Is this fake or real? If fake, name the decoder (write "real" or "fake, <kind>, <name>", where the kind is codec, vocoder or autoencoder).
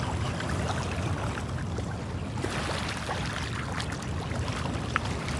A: real